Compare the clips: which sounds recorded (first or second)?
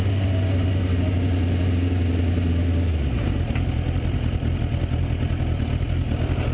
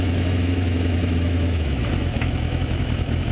first